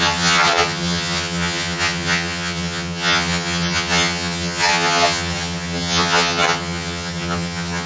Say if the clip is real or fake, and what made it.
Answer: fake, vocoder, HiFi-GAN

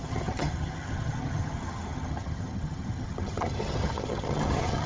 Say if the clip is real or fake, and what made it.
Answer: fake, vocoder, HiFi-GAN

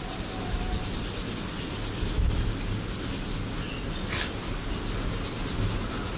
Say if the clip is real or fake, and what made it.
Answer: real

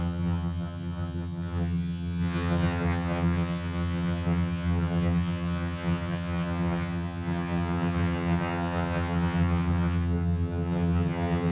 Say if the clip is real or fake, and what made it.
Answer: fake, vocoder, HiFi-GAN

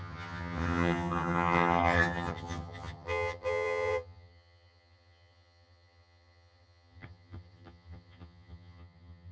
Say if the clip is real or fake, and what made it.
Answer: fake, vocoder, HiFi-GAN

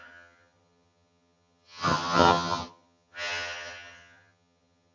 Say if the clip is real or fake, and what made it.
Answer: fake, vocoder, HiFi-GAN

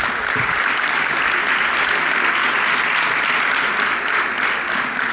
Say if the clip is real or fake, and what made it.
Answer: real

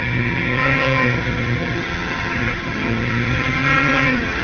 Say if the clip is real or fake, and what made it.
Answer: fake, vocoder, HiFi-GAN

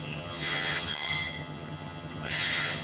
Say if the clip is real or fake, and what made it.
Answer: fake, vocoder, HiFi-GAN